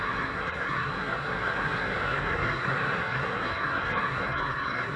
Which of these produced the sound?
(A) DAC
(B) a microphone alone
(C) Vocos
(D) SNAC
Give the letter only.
D